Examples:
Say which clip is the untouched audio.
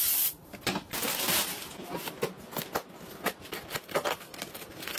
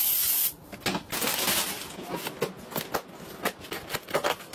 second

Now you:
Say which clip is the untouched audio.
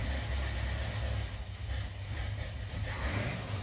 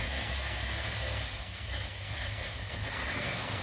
first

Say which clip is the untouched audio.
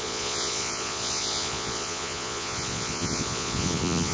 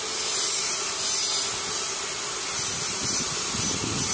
second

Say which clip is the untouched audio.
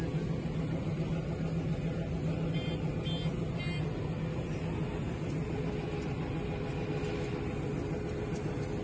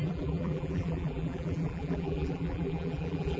first